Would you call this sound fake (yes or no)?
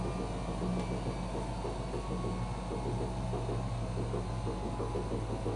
no